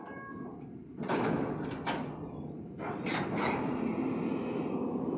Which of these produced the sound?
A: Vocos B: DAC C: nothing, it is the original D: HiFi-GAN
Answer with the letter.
C